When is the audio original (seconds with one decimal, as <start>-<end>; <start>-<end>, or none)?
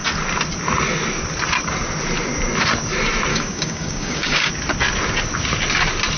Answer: 0.0-3.3; 4.5-6.2